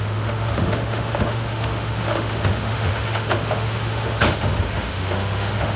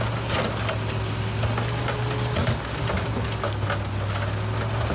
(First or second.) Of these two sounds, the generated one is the first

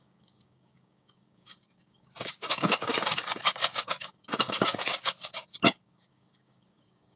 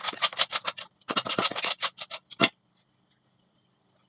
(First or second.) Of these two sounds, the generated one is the first